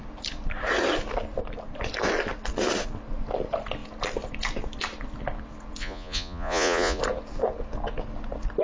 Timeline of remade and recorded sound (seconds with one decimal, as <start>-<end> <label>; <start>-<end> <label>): 0.0-5.8 recorded; 5.8-7.0 remade; 7.0-8.6 recorded